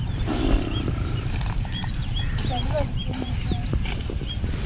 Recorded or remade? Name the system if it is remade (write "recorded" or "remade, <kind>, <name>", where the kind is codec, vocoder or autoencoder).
remade, vocoder, BigVGAN v2